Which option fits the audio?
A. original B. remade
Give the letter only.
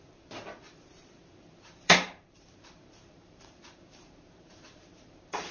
B